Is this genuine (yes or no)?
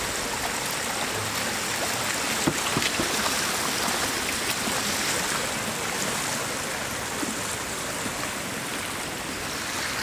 yes